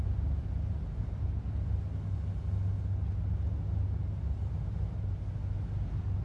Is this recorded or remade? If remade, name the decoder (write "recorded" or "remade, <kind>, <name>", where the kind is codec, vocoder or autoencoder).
recorded